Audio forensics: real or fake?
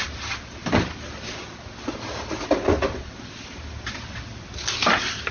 real